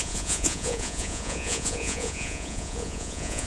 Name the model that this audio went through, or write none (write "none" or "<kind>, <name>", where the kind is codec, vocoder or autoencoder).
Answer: vocoder, Vocos